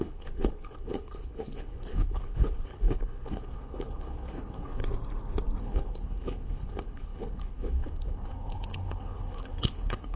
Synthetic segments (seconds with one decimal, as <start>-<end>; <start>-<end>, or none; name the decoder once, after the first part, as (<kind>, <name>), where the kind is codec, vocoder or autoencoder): 0.0-4.8 (codec, HILCodec); 5.6-10.2